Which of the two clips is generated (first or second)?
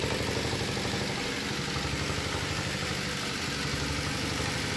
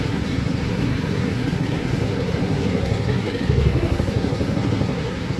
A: second